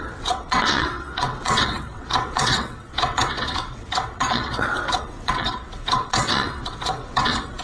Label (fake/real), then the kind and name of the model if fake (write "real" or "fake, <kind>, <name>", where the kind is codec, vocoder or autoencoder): fake, vocoder, WaveNeXt